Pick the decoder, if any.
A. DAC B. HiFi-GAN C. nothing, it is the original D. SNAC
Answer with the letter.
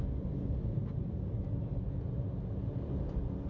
C